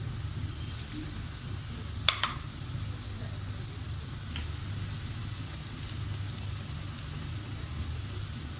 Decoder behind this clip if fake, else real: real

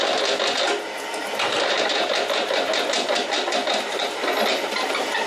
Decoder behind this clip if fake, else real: real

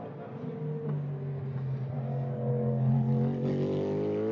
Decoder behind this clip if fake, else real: real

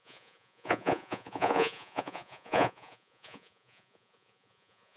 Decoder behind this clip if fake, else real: fake, vocoder, Vocos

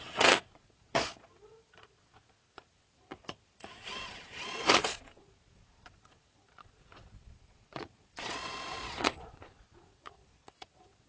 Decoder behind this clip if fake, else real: fake, vocoder, Vocos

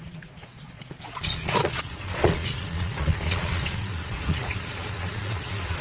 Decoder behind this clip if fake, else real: fake, vocoder, Vocos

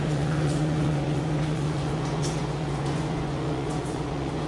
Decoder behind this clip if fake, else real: fake, vocoder, Vocos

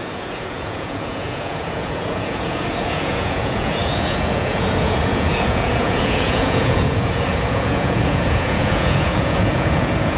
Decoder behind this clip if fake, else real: fake, vocoder, Vocos